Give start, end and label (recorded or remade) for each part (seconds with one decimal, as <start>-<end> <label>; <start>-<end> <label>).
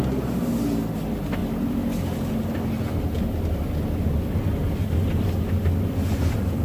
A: 0.0-1.4 recorded; 1.4-2.5 remade; 2.5-6.6 recorded